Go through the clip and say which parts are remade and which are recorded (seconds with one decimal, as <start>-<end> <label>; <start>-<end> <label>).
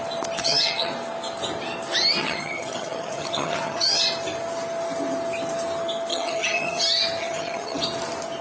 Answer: 0.0-0.4 recorded; 0.4-0.9 remade; 0.9-2.2 recorded; 2.2-4.0 remade; 4.0-6.1 recorded; 6.1-6.8 remade; 6.8-7.2 recorded; 7.2-7.8 remade; 7.8-8.4 recorded